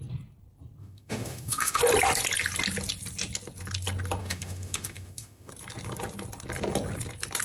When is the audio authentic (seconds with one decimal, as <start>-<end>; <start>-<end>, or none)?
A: 0.0-0.8; 1.8-4.2; 5.5-7.4